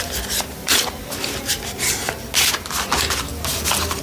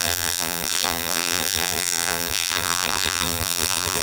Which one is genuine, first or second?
first